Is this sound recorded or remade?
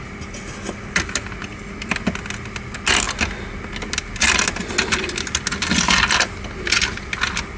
recorded